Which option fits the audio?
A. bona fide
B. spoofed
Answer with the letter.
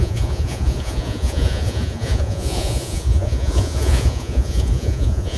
B